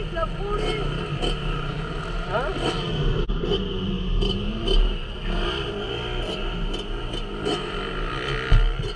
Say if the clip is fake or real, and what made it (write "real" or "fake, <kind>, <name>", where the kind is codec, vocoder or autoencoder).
real